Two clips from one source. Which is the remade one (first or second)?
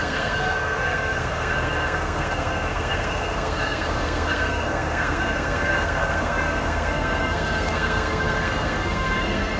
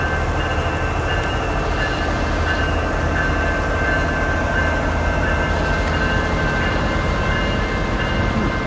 first